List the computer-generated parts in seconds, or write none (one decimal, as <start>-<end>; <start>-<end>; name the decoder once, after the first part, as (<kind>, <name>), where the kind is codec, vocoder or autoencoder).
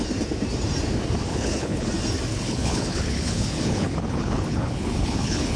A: 1.3-1.9 (codec, HILCodec); 2.3-5.6